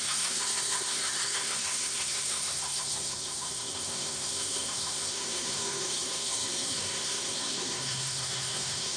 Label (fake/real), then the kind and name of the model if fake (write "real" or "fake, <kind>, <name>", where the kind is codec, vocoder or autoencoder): fake, codec, SNAC